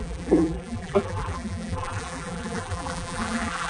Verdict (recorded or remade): remade